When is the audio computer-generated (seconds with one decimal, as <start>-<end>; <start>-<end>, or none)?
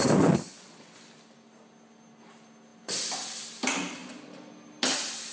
none